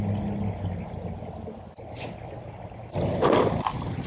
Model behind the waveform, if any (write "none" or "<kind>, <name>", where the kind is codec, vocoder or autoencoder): none